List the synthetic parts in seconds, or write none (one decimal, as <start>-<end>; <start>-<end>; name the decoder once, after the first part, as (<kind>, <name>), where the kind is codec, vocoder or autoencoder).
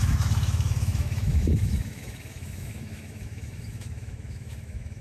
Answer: 0.0-5.0 (autoencoder, DAC-VAE)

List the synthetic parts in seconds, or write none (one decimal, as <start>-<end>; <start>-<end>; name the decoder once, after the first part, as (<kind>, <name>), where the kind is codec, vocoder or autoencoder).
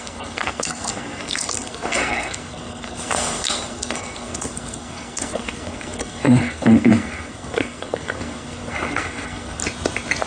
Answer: 0.0-9.6 (codec, SNAC)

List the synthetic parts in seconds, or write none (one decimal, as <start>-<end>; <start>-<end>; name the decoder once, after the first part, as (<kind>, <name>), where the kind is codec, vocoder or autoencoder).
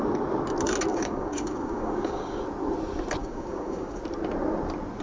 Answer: 0.9-2.4 (codec, DAC); 3.2-4.0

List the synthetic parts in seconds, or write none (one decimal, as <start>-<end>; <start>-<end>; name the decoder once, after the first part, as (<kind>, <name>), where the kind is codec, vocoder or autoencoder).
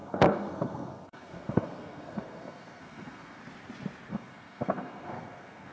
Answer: 0.0-3.4 (codec, SNAC); 4.1-5.7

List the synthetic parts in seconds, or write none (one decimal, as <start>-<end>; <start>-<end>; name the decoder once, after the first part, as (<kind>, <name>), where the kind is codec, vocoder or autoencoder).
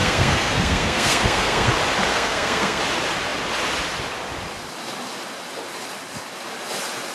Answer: 0.0-1.7 (codec, SNAC); 2.1-2.8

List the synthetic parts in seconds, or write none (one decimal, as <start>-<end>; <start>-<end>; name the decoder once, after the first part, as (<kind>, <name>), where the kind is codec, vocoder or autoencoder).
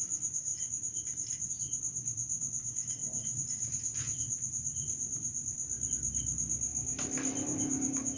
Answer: none